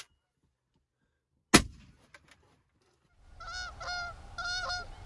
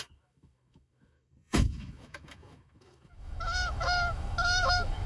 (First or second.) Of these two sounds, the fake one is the second